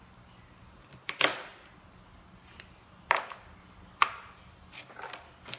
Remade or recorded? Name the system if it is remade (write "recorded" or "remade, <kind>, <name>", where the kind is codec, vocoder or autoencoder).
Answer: recorded